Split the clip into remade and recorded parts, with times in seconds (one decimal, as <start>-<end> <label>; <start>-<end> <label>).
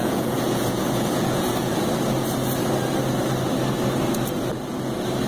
0.0-1.9 remade; 1.9-5.3 recorded